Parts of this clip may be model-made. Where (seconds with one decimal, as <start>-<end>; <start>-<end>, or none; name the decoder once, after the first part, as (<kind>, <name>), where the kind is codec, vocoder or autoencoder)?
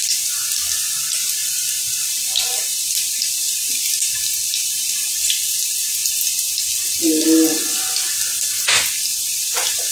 1.4-5.3 (vocoder, BigVGAN v2); 6.0-6.6